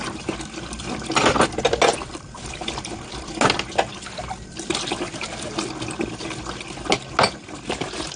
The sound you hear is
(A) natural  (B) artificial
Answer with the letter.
A